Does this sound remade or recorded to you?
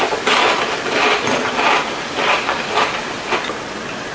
recorded